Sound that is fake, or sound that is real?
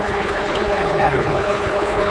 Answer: fake